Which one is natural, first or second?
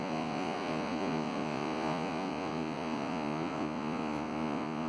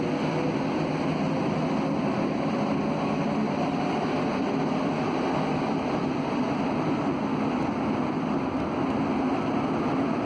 second